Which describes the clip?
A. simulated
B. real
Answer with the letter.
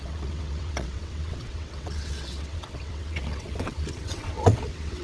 A